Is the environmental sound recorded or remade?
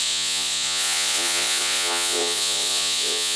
remade